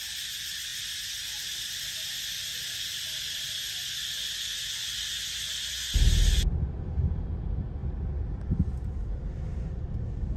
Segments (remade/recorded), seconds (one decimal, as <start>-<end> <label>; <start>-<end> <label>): 0.0-10.4 recorded